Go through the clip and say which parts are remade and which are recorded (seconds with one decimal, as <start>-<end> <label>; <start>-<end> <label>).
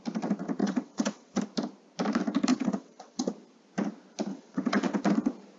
0.0-0.6 recorded; 0.6-1.4 remade; 1.4-2.5 recorded; 2.5-3.3 remade; 3.3-4.3 recorded; 4.3-5.0 remade; 5.0-5.6 recorded